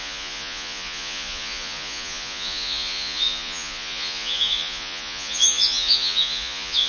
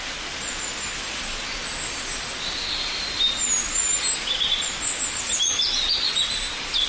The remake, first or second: first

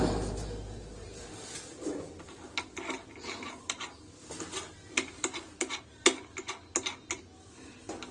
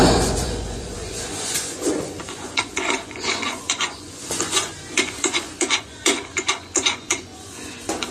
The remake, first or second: second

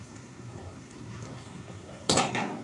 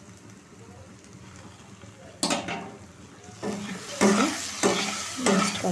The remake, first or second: first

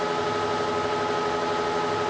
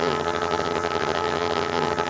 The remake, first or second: second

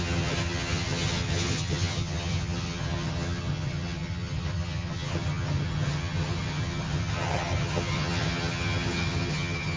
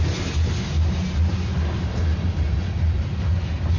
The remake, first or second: first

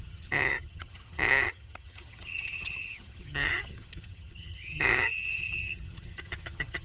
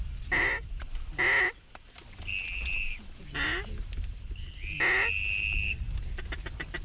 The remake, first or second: first